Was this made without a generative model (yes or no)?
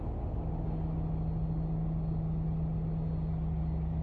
yes